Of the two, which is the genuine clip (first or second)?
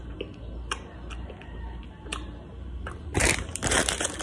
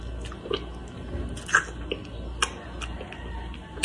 second